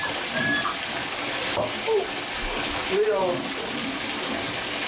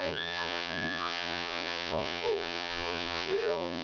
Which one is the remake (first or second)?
second